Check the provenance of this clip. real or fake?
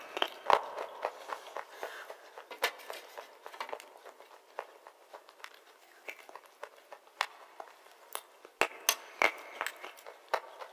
real